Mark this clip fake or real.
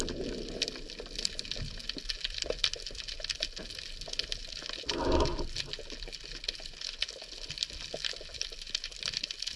real